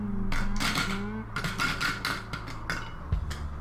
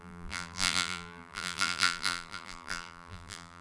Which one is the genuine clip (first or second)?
first